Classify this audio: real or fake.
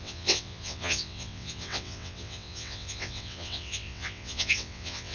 fake